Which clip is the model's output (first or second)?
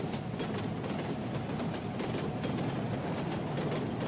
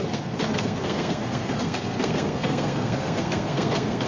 second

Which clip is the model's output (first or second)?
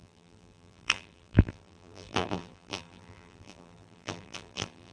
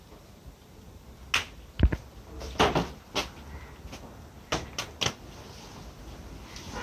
first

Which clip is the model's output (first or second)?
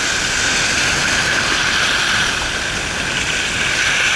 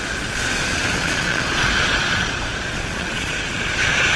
second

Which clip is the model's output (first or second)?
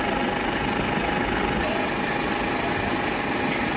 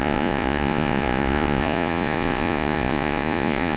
second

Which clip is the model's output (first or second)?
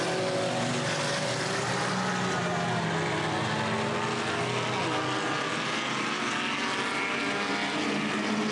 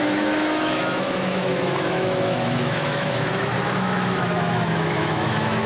second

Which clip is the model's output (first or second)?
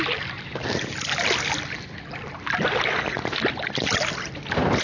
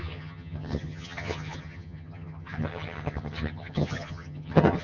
second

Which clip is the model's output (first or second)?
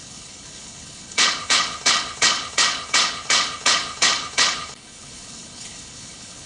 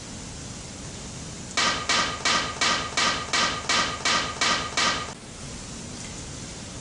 first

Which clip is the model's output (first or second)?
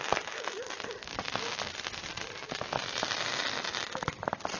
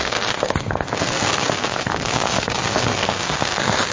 second